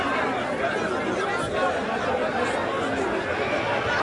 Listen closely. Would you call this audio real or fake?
real